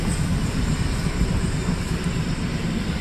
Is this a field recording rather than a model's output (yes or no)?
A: yes